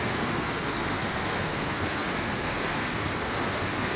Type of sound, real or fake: fake